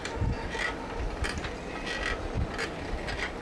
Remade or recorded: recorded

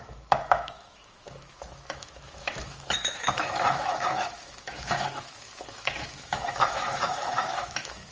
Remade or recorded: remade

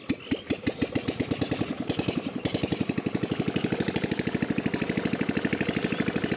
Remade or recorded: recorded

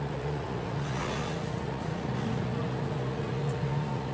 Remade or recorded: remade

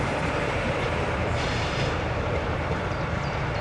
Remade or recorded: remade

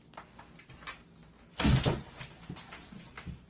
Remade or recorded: recorded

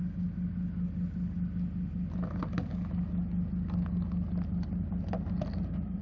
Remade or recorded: recorded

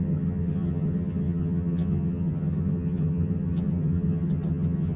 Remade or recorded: remade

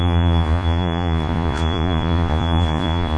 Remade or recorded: remade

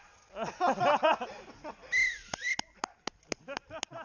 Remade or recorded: recorded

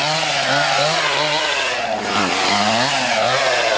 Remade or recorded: recorded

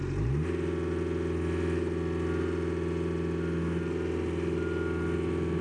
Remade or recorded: recorded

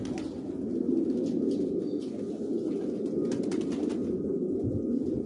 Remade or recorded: recorded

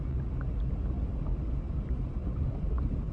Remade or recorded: recorded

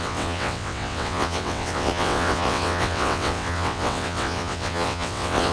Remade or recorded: remade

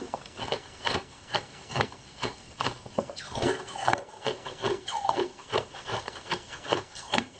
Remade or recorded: remade